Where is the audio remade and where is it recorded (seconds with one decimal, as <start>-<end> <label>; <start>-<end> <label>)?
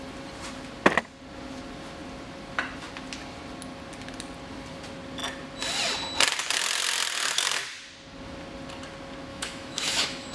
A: 0.0-9.3 recorded; 9.3-10.3 remade